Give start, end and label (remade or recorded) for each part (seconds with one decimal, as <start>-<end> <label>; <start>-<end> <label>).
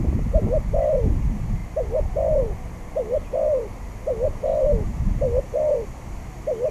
0.0-6.7 recorded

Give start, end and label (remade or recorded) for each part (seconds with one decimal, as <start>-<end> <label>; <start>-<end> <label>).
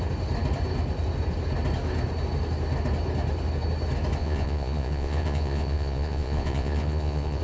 0.0-4.2 recorded; 4.2-7.4 remade